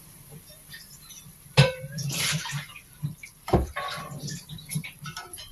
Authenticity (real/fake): fake